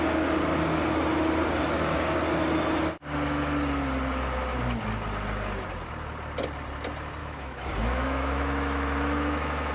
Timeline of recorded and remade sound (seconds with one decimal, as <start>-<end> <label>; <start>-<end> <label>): 0.0-7.2 recorded; 7.2-9.7 remade